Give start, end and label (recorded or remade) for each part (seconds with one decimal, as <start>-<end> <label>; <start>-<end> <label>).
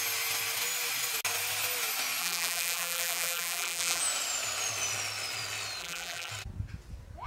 0.0-2.2 recorded; 2.2-4.0 remade; 4.0-5.8 recorded; 5.8-6.3 remade; 6.3-7.3 recorded